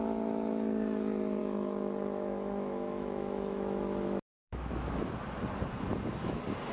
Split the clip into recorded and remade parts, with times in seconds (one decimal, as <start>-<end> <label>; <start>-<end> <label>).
0.0-1.4 recorded; 1.4-5.0 remade; 5.0-6.7 recorded